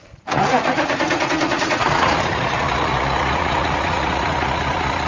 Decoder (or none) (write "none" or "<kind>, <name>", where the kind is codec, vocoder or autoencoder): vocoder, Vocos